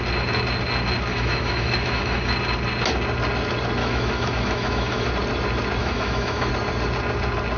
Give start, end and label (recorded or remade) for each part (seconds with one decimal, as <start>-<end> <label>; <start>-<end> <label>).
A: 0.0-1.1 recorded; 1.1-2.3 remade; 2.3-3.8 recorded; 3.8-5.1 remade; 5.1-5.8 recorded; 5.8-6.5 remade; 6.5-7.6 recorded